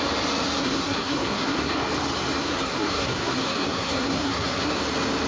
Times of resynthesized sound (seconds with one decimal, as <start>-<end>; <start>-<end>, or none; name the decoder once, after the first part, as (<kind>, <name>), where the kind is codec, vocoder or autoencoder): 0.6-1.7 (codec, SNAC); 2.4-4.8